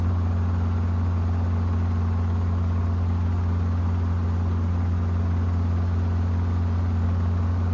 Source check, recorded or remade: recorded